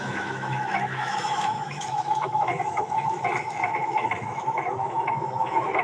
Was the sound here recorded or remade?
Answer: remade